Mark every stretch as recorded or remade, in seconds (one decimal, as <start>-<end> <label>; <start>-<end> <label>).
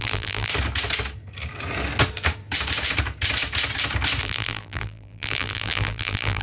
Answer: 0.0-0.5 remade; 0.5-4.2 recorded; 4.2-6.4 remade